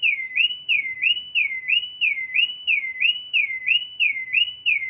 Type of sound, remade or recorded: recorded